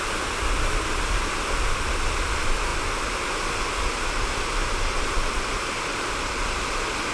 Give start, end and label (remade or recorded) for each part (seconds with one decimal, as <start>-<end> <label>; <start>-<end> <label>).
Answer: 0.0-7.1 recorded